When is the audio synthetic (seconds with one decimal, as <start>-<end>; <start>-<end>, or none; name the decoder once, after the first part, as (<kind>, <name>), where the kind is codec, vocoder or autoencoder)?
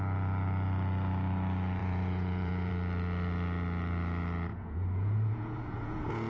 1.8-2.7 (vocoder, Vocos); 4.5-6.3